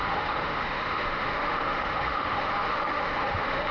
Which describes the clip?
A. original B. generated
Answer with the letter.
B